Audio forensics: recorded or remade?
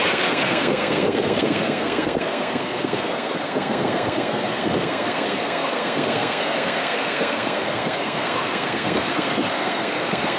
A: remade